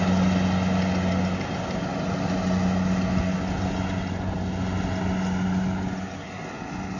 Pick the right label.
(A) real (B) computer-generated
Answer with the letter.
A